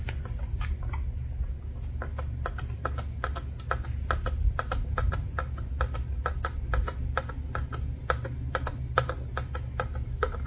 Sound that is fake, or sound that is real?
real